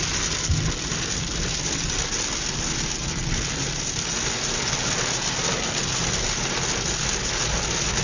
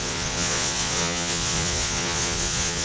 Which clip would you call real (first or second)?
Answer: first